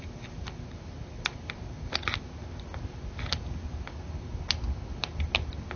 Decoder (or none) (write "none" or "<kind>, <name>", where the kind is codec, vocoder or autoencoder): none